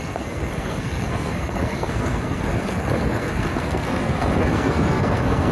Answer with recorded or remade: remade